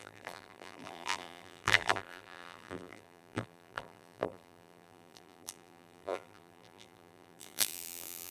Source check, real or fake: fake